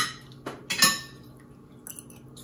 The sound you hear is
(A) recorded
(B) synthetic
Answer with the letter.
A